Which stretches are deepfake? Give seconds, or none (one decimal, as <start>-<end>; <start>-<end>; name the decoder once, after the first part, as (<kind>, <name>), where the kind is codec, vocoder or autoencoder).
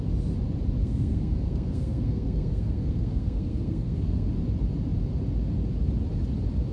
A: 0.8-4.3 (codec, SNAC)